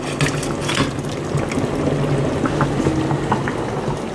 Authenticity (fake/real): real